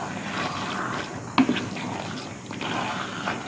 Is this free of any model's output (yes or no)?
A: yes